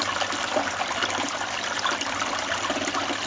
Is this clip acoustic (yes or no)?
yes